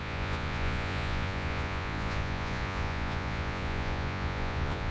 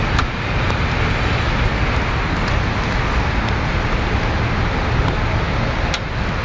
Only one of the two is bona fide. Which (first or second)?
second